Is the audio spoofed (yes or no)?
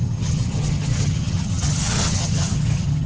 yes